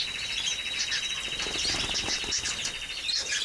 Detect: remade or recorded recorded